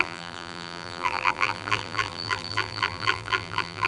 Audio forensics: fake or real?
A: fake